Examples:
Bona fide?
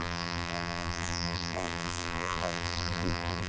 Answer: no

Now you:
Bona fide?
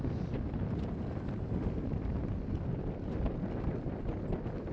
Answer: yes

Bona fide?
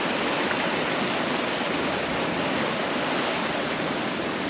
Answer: yes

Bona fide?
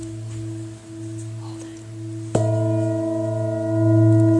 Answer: yes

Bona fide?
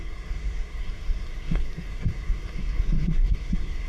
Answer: no